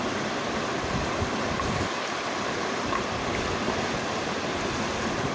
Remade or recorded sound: recorded